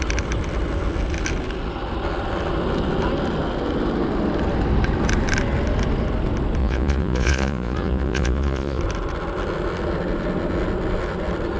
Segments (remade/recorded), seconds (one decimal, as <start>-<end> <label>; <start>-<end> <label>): 0.0-6.6 recorded; 6.6-8.8 remade; 8.8-11.6 recorded